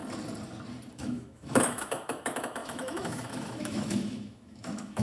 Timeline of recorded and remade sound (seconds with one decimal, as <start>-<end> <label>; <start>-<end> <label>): 0.0-0.9 recorded; 0.9-5.0 remade